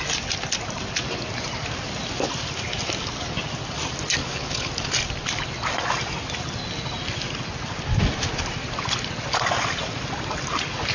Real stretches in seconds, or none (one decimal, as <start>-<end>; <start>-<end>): 0.0-4.2; 4.7-10.9